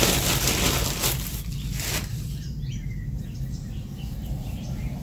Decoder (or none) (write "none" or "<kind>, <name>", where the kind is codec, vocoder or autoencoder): none